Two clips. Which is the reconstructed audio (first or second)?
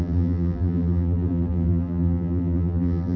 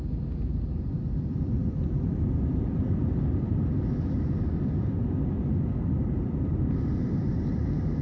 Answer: first